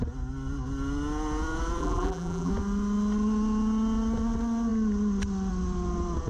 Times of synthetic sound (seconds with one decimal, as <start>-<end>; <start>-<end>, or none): 1.8-2.5